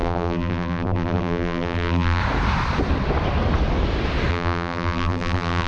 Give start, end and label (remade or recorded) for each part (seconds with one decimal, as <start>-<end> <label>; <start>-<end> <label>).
0.0-2.2 remade; 2.2-4.3 recorded; 4.3-5.7 remade